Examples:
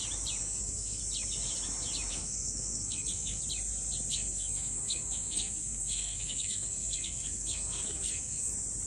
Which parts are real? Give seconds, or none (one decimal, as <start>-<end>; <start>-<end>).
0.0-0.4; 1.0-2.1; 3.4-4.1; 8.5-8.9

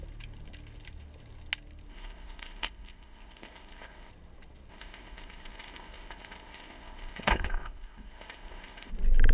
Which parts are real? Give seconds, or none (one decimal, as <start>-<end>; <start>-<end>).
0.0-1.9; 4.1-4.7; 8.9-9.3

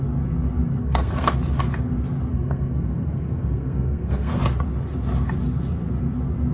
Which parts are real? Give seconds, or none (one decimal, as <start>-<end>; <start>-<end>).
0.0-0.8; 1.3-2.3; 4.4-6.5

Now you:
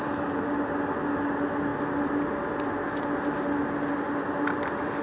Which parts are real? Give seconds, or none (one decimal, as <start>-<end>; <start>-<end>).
0.0-5.0